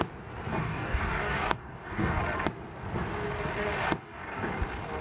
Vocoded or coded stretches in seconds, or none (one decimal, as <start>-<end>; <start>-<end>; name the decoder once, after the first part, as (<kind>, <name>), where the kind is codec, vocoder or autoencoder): 0.5-2.2 (codec, DAC); 4.0-4.5